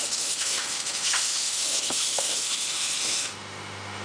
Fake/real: fake